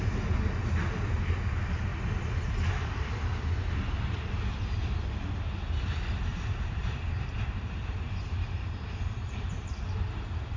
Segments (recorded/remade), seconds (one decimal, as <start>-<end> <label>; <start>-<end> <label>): 0.0-6.3 recorded; 6.3-9.7 remade; 9.7-10.6 recorded